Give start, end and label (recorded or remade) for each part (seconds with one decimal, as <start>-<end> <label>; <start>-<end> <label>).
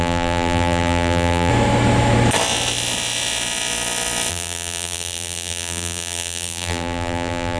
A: 0.0-1.5 remade; 1.5-4.3 recorded; 4.3-7.6 remade